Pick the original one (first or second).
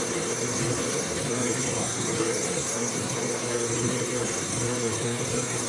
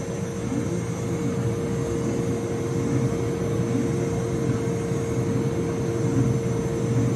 second